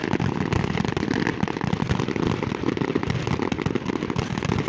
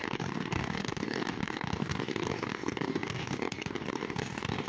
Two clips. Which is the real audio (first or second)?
first